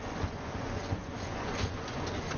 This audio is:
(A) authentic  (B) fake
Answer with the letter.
B